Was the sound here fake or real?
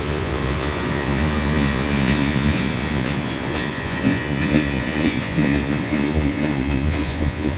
fake